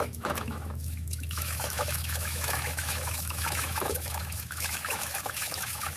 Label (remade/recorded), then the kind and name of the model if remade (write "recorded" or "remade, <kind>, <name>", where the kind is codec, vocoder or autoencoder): remade, autoencoder, DAC-VAE